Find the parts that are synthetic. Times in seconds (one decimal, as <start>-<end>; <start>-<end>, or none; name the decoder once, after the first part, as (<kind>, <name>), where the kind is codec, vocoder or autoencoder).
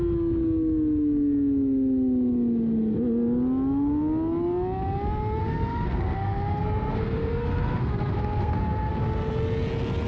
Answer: 5.4-8.9 (codec, SNAC)